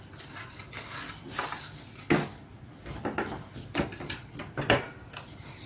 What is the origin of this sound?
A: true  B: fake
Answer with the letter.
A